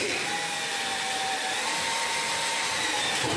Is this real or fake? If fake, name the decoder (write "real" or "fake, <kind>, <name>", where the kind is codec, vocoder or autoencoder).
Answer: real